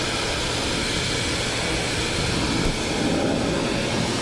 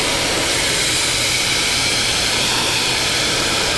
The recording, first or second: first